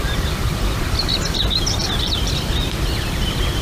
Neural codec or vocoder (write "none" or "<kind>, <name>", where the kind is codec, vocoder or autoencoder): vocoder, BigVGAN v2